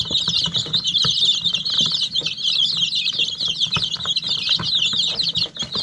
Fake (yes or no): no